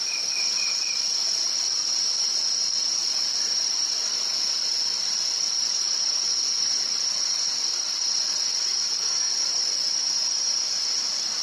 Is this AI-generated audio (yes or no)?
yes